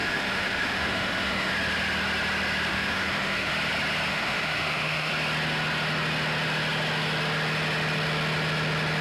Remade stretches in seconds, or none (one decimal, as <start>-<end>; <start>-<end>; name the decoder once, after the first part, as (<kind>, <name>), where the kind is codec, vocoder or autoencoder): 0.0-1.5 (autoencoder, DAC-VAE); 2.7-3.5; 4.1-5.1